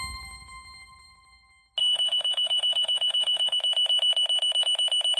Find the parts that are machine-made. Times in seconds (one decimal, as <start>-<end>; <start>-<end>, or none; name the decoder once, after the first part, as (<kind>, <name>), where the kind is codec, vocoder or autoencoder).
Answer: 1.8-3.6 (autoencoder, DAC-VAE)